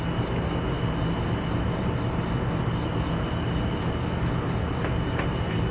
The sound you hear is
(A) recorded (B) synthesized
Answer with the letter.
A